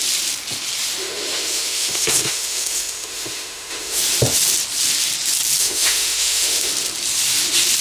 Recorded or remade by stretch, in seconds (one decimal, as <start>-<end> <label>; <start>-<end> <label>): 0.0-1.0 recorded; 1.0-4.0 remade; 4.0-5.6 recorded; 5.6-6.7 remade; 6.7-7.8 recorded